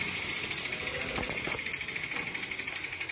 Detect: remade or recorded recorded